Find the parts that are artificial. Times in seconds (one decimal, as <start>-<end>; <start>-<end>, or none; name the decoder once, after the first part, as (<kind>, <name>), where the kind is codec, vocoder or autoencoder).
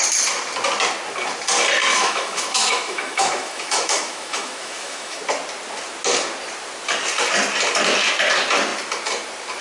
1.9-5.2 (autoencoder, DAC-VAE)